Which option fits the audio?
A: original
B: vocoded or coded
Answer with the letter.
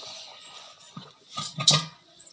B